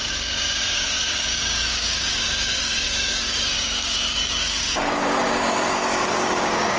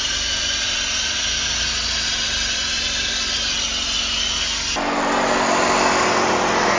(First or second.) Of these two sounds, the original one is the second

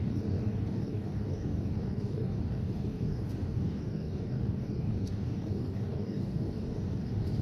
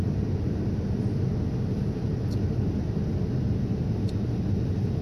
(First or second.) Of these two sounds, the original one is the second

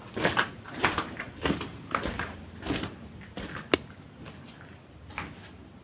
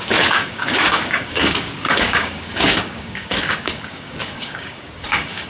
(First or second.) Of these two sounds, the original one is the first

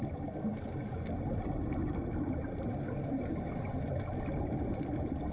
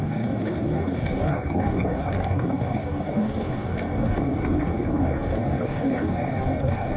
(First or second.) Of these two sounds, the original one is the first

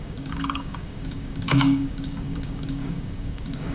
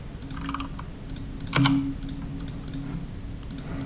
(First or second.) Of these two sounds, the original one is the second